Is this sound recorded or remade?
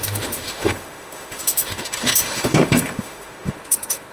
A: remade